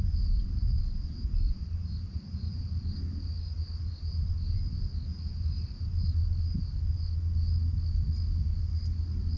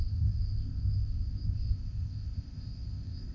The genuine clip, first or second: first